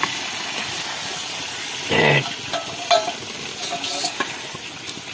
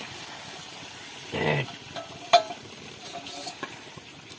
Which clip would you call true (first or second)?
first